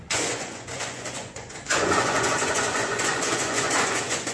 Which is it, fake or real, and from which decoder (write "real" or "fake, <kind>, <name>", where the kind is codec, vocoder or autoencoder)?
fake, vocoder, Vocos